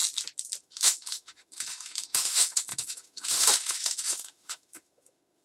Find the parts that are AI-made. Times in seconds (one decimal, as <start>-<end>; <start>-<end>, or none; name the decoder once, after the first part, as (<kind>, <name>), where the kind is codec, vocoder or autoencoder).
0.6-5.4 (autoencoder, DAC-VAE)